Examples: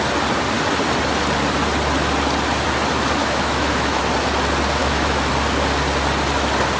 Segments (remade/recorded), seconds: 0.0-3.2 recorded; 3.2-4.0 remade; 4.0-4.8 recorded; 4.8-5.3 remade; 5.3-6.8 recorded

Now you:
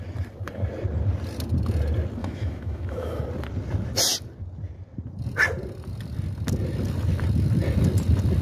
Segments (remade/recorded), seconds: 0.0-2.2 recorded; 2.2-3.2 remade; 3.2-8.4 recorded

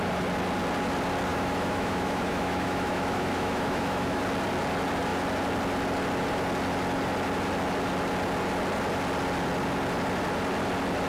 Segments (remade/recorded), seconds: 0.0-1.3 recorded; 1.3-4.2 remade; 4.2-11.1 recorded

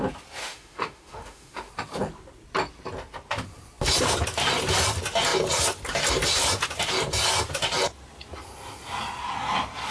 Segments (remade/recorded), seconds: 0.0-0.4 recorded; 0.4-1.7 remade; 1.7-9.9 recorded

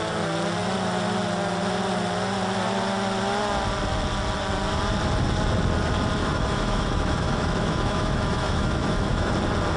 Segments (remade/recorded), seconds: 0.0-6.2 recorded; 6.2-9.3 remade; 9.3-9.8 recorded

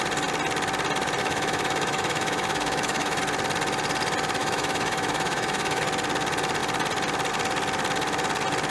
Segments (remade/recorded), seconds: 0.0-1.2 recorded; 1.2-3.2 remade; 3.2-4.4 recorded; 4.4-5.8 remade; 5.8-8.7 recorded

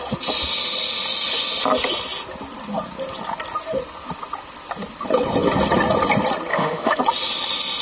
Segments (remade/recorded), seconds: 0.0-6.5 recorded; 6.5-7.0 remade; 7.0-7.8 recorded